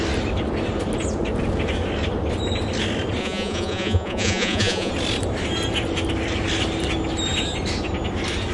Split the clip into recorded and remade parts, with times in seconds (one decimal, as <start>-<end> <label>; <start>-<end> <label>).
0.0-3.2 recorded; 3.2-4.9 remade; 4.9-8.5 recorded